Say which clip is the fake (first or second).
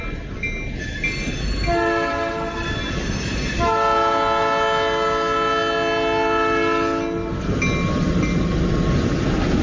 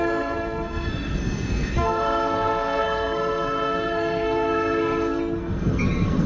second